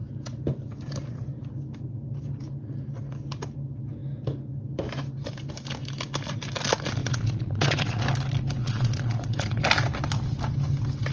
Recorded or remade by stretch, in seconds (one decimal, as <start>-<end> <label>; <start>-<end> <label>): 0.0-7.0 recorded; 7.0-8.0 remade; 8.0-8.6 recorded; 8.6-9.6 remade; 9.6-11.1 recorded